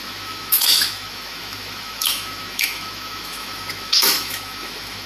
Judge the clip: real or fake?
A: fake